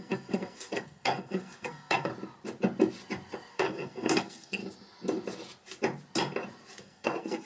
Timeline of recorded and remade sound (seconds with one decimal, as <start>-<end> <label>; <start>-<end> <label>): 0.0-2.1 remade; 2.1-3.5 recorded; 3.5-4.6 remade; 4.6-6.8 recorded; 6.8-7.5 remade